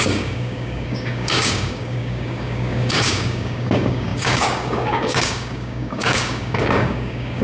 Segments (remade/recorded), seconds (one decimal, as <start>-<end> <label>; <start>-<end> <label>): 0.0-7.4 remade